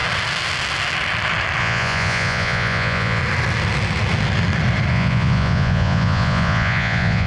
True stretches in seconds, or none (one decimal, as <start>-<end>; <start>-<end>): 0.0-1.6; 3.2-4.9